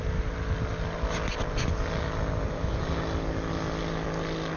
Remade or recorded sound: recorded